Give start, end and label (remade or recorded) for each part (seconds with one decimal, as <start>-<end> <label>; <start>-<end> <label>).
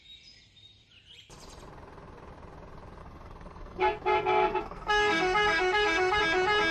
0.0-3.0 recorded; 3.0-6.2 remade; 6.2-6.7 recorded